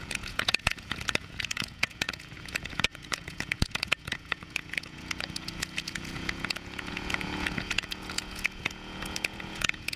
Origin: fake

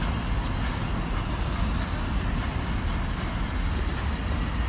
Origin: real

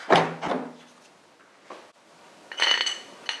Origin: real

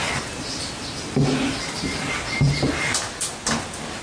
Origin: real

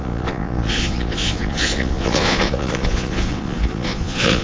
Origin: fake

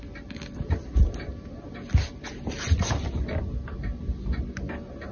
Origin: real